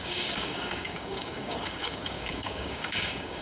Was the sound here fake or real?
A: fake